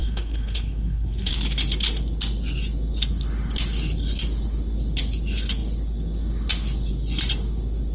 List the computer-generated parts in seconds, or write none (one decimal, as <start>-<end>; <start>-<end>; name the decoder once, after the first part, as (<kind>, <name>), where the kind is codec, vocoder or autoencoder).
0.0-1.3 (codec, SNAC)